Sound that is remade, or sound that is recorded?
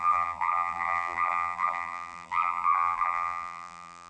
remade